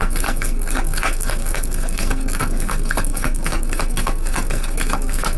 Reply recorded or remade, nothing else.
remade